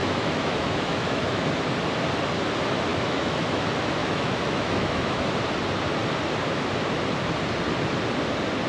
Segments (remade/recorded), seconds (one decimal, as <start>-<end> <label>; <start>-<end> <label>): 0.0-1.5 remade; 1.5-2.9 recorded; 2.9-3.6 remade; 3.6-4.0 recorded; 4.0-5.2 remade; 5.2-8.7 recorded